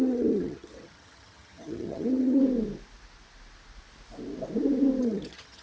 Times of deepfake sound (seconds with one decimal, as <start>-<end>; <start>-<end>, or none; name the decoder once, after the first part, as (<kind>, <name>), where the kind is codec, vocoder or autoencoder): 0.0-2.4 (vocoder, HiFi-GAN); 5.0-5.6